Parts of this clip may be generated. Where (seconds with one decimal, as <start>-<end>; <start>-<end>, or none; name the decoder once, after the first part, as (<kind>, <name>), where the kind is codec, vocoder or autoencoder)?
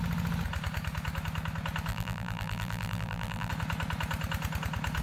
1.9-3.5 (vocoder, BigVGAN v2)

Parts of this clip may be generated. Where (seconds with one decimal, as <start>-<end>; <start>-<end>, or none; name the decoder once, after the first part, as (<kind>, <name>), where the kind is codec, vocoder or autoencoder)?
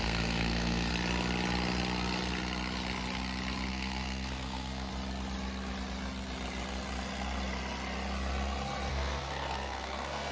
0.0-0.9 (codec, SNAC); 3.7-4.9; 8.9-10.3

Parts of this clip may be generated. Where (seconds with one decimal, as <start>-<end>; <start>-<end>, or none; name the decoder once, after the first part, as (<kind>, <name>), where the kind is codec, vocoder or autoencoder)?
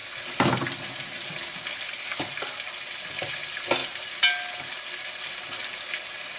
none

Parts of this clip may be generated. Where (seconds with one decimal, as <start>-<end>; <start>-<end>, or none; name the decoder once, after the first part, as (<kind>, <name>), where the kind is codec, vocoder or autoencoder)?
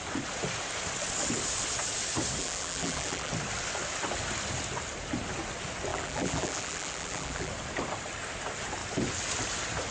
2.4-3.3 (vocoder, BigVGAN v2); 5.9-7.5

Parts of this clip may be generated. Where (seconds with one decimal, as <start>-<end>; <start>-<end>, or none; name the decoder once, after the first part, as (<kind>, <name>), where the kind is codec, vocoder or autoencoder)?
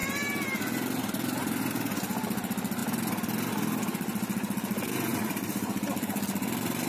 0.0-1.6 (vocoder, BigVGAN v2); 5.1-6.9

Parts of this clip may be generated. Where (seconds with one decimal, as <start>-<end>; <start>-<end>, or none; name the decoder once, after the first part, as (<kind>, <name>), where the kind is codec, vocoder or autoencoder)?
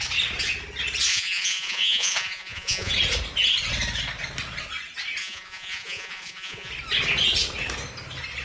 1.1-2.9 (vocoder, Vocos); 5.2-6.7